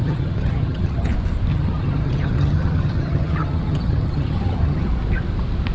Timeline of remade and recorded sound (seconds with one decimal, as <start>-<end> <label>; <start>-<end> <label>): 0.0-1.1 remade; 1.1-1.5 recorded; 1.5-4.9 remade; 4.9-5.7 recorded